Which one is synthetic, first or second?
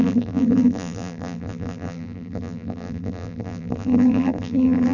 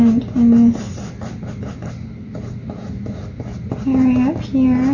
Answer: first